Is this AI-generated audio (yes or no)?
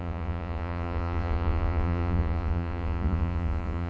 yes